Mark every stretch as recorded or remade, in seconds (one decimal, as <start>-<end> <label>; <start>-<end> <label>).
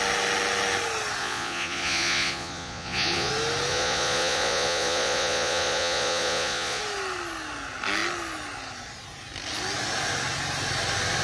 0.0-1.2 recorded; 1.2-3.3 remade; 3.3-3.7 recorded; 3.7-6.8 remade; 6.8-11.2 recorded